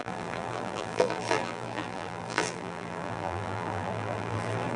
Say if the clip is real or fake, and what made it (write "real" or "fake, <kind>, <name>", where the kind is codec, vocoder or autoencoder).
fake, vocoder, BigVGAN v2